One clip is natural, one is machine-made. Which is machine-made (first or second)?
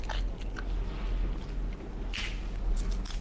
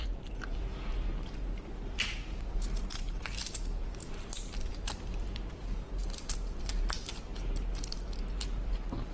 second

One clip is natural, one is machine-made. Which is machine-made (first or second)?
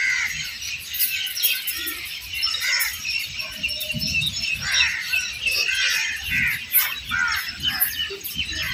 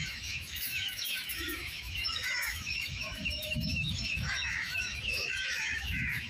second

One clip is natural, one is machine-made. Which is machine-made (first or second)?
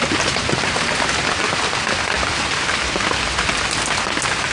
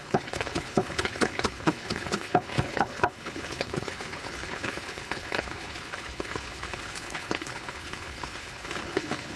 second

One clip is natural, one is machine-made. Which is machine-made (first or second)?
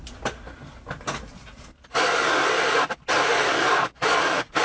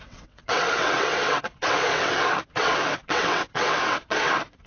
second